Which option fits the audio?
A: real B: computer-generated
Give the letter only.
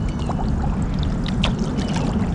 A